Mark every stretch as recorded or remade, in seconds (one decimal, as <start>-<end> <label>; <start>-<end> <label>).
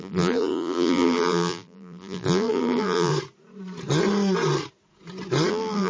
0.0-3.1 remade; 3.1-5.5 recorded; 5.5-5.9 remade